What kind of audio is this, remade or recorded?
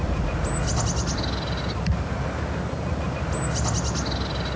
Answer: recorded